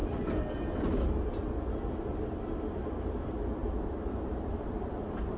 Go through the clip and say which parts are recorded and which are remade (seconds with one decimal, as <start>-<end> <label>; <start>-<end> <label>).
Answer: 0.0-3.6 recorded; 3.6-5.4 remade